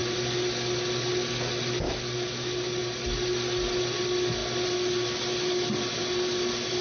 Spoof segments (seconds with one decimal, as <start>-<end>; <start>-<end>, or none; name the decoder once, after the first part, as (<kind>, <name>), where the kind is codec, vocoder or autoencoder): none